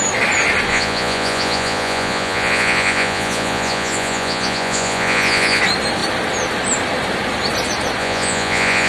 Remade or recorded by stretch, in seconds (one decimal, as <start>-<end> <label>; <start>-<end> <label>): 0.0-0.7 recorded; 0.7-5.6 remade; 5.6-8.0 recorded; 8.0-8.9 remade